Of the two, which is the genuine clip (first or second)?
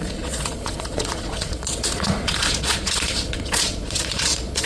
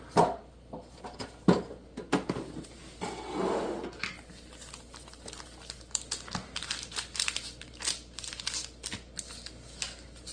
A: second